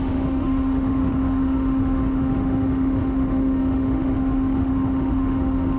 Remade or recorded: remade